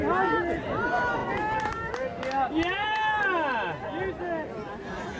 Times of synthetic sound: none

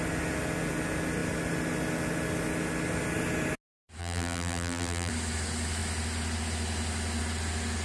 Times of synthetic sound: 4.0-5.1 (vocoder, BigVGAN v2)

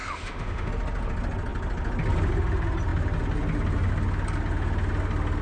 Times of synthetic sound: 0.0-0.7 (autoencoder, DAC-VAE)

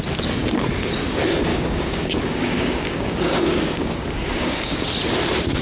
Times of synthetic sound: 1.5-4.9 (codec, DAC)

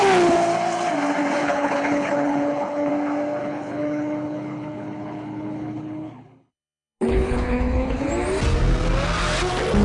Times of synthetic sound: 1.4-2.9 (codec, HILCodec); 3.4-8.1

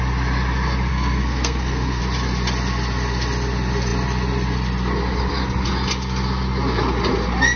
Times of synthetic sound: 0.9-2.0 (codec, SNAC)

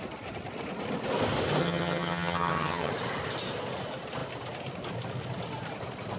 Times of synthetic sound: 1.6-2.9 (vocoder, HiFi-GAN)